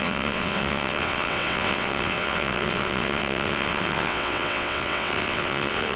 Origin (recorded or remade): remade